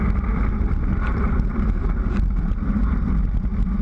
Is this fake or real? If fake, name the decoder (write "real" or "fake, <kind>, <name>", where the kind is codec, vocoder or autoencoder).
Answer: real